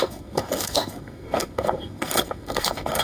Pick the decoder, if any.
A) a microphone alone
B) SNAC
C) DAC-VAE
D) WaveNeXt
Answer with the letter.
B